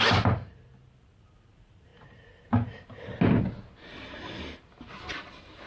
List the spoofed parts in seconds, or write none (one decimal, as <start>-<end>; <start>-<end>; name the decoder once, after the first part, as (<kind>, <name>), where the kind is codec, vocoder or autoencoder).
none